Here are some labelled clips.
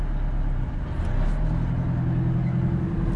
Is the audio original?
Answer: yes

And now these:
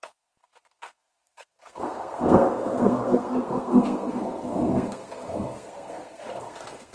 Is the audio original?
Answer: no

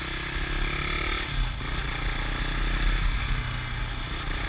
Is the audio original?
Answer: yes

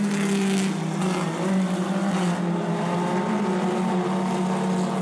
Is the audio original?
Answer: yes